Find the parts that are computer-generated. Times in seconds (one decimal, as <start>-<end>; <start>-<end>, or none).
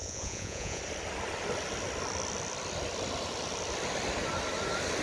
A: 0.0-0.8